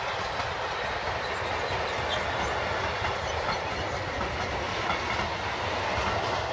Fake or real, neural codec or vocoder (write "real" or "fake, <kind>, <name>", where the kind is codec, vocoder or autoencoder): real